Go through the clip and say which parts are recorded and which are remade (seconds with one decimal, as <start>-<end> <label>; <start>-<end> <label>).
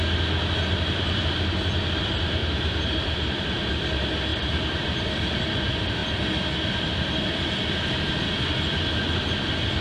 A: 0.0-2.4 recorded; 2.4-3.8 remade; 3.8-4.3 recorded; 4.3-5.6 remade; 5.6-9.8 recorded